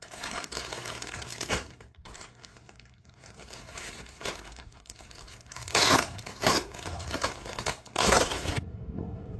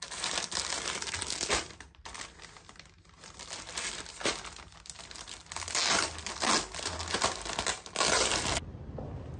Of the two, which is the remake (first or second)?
first